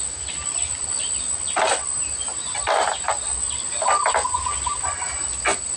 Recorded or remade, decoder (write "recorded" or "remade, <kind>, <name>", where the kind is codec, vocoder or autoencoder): recorded